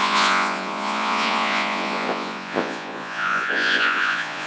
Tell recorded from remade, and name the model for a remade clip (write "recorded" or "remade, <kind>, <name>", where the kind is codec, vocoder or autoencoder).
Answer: remade, vocoder, Vocos